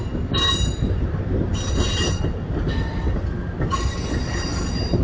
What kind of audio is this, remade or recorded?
recorded